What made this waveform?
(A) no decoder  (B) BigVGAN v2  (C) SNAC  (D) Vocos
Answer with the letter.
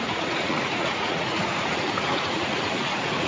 D